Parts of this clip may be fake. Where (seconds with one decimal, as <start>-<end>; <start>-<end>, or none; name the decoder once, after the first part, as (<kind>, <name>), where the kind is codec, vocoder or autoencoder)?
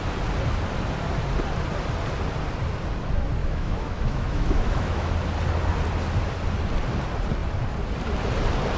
3.4-5.1 (autoencoder, DAC-VAE)